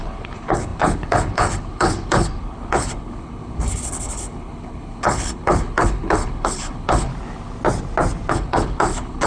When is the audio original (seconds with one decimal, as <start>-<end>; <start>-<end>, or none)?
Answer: 7.1-8.3